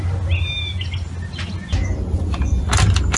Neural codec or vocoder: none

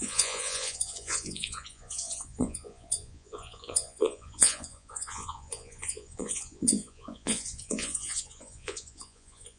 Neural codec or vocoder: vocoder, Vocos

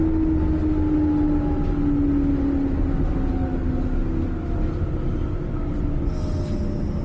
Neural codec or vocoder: none